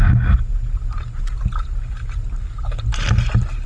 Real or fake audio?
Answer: real